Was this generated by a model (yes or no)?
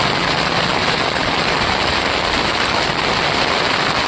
no